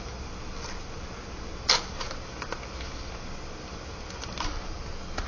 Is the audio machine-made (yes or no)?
no